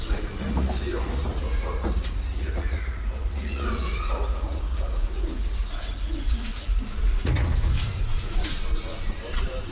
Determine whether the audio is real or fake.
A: fake